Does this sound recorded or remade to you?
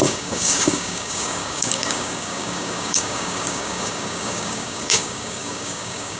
remade